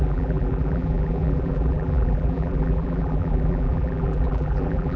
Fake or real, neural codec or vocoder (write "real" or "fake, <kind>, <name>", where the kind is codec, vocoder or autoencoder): fake, vocoder, BigVGAN v2